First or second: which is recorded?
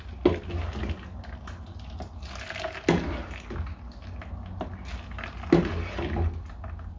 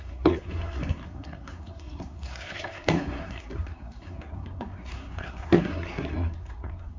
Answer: first